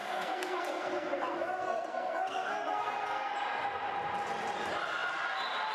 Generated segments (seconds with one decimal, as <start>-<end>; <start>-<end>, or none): 0.0-3.3